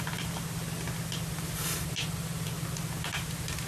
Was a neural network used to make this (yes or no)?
no